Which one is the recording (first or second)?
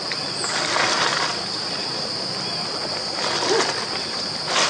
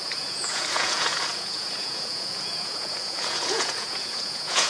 first